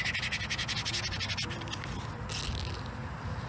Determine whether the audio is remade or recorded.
recorded